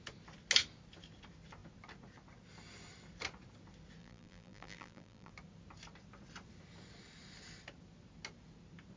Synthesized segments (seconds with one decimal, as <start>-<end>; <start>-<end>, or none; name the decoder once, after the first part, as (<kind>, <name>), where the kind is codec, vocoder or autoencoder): 4.0-5.3 (vocoder, BigVGAN v2)